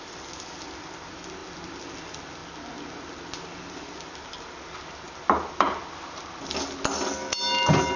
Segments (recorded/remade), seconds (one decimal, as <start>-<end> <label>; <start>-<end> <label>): 0.0-8.0 recorded